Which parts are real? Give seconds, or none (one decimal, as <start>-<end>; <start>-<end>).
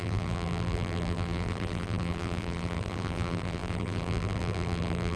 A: none